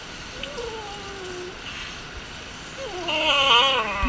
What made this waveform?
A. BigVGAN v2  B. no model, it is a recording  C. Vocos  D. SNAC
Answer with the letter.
B